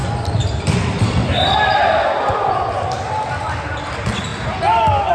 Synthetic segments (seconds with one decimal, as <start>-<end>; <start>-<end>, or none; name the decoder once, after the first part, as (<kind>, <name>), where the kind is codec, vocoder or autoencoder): 0.0-3.0 (vocoder, BigVGAN v2)